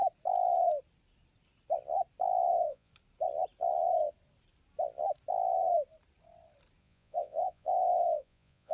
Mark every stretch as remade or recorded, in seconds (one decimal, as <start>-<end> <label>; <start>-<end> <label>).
0.0-2.5 recorded; 2.5-2.9 remade; 2.9-6.8 recorded; 6.8-8.7 remade